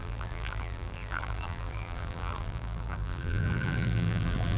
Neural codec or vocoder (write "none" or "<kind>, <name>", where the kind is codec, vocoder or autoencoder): vocoder, BigVGAN v2